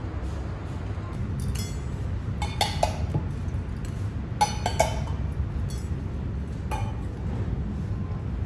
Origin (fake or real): real